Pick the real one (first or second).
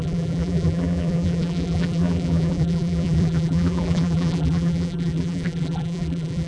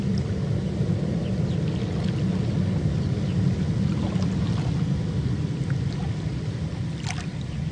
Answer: second